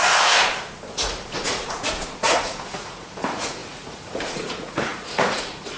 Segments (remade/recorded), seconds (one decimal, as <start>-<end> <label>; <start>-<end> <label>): 0.0-0.9 recorded; 0.9-5.8 remade